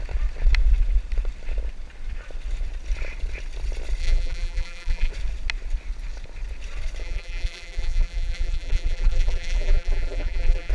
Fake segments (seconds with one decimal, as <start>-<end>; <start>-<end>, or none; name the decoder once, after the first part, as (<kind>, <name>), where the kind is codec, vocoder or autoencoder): 4.0-5.1 (vocoder, BigVGAN v2); 7.0-10.7